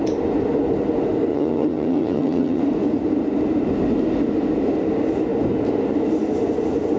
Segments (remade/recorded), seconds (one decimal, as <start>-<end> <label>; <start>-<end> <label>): 0.0-1.3 recorded; 1.3-2.6 remade; 2.6-7.0 recorded